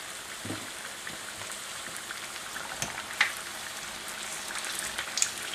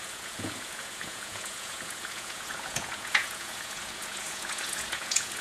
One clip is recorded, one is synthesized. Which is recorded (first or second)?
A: first